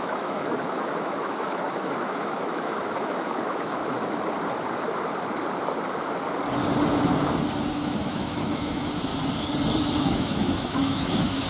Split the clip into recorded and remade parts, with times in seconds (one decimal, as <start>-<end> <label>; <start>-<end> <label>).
0.0-3.8 remade; 3.8-7.7 recorded; 7.7-9.1 remade; 9.1-10.0 recorded; 10.0-11.5 remade